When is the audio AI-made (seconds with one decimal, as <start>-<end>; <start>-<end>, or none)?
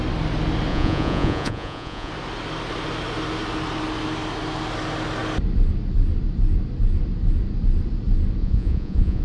0.7-2.1; 8.4-9.2